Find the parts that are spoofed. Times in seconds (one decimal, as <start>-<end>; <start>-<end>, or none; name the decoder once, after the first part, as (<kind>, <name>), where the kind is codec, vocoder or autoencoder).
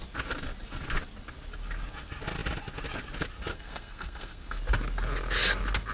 3.5-4.6 (codec, SNAC)